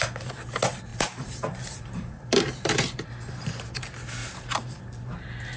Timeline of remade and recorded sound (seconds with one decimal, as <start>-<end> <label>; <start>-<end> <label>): 0.0-0.9 recorded; 0.9-3.1 remade; 3.1-4.2 recorded; 4.2-4.8 remade; 4.8-5.6 recorded

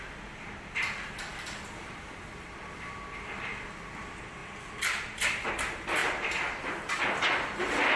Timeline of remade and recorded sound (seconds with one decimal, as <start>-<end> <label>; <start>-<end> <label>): 0.0-6.0 recorded; 6.0-6.9 remade; 6.9-8.0 recorded